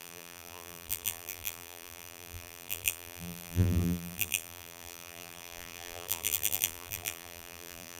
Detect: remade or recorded remade